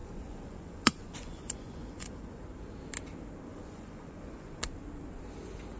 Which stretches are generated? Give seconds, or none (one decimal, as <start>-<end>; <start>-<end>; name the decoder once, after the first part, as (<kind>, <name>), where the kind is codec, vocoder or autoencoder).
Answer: 0.0-2.4 (vocoder, Vocos); 3.5-4.6